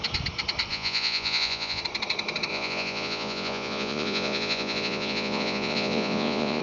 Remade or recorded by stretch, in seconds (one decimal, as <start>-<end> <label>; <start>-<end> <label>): 0.0-0.7 recorded; 0.7-1.8 remade; 1.8-2.5 recorded; 2.5-6.6 remade